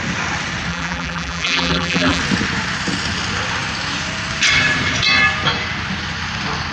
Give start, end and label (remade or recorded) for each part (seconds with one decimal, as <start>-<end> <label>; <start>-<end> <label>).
0.0-0.7 recorded; 0.7-2.2 remade; 2.2-6.7 recorded